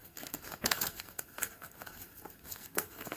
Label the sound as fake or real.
fake